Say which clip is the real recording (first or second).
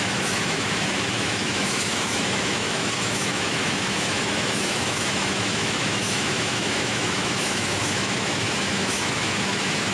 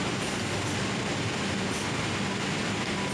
second